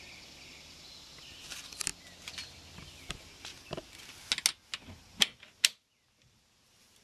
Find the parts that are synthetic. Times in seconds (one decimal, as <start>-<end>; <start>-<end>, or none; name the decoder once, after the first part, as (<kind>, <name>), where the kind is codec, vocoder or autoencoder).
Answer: none